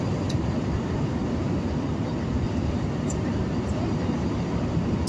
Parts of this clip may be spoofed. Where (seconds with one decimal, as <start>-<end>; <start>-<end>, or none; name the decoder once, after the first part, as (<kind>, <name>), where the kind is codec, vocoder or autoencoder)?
none

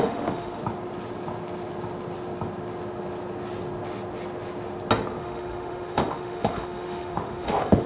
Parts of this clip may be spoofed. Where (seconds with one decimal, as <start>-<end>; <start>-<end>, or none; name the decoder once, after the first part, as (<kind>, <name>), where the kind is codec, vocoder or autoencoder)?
0.0-0.6 (autoencoder, DAC-VAE); 5.2-7.9